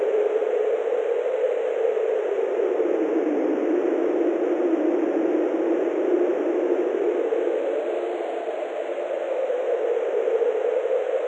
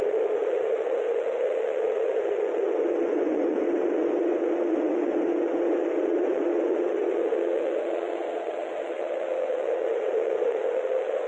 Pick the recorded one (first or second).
first